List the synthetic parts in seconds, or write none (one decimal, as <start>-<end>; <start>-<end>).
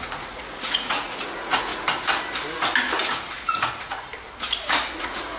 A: 0.0-1.7; 3.1-4.1; 5.0-5.4